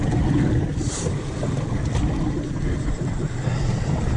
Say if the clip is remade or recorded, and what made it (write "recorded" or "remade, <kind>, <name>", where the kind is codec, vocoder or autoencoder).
recorded